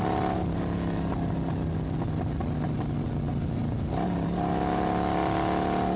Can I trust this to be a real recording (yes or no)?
yes